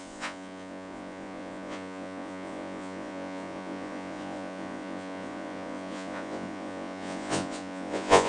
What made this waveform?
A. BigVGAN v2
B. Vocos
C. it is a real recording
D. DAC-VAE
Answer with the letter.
B